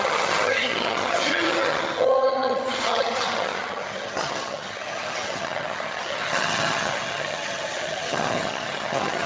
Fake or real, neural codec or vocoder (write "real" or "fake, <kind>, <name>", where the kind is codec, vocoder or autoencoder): fake, vocoder, HiFi-GAN